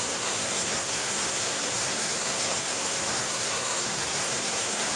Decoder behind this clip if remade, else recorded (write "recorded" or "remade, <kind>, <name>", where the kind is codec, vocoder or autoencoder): remade, codec, SNAC